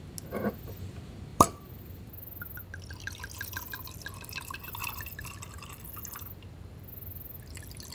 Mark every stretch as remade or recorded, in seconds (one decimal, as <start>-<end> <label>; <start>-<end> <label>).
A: 0.0-1.3 recorded; 1.3-1.8 remade; 1.8-4.8 recorded; 4.8-6.3 remade; 6.3-7.9 recorded

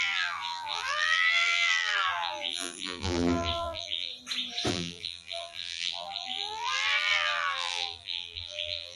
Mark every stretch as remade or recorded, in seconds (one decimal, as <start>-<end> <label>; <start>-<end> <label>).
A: 0.0-4.1 remade; 4.1-4.7 recorded; 4.7-9.0 remade

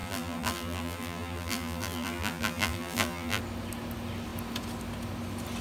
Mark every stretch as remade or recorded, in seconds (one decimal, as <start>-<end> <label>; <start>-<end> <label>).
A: 0.0-3.4 remade; 3.4-5.6 recorded

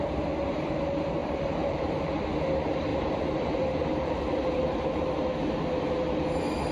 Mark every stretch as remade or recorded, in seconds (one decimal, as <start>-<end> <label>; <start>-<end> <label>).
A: 0.0-1.2 recorded; 1.2-2.1 remade; 2.1-2.9 recorded; 2.9-5.0 remade; 5.0-6.7 recorded

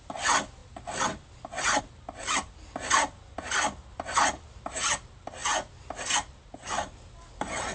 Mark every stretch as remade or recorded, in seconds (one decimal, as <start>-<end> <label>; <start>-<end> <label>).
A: 0.0-7.7 recorded

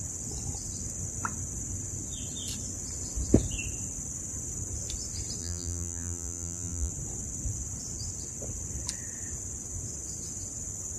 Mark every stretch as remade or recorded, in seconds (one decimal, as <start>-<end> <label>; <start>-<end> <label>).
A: 0.0-5.4 recorded; 5.4-6.9 remade; 6.9-11.0 recorded

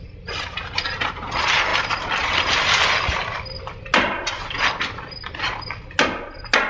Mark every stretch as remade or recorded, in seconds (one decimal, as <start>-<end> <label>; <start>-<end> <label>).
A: 0.0-6.7 recorded